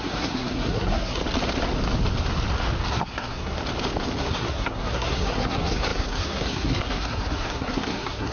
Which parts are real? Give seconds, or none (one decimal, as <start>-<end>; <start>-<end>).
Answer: 1.2-2.9; 3.6-4.2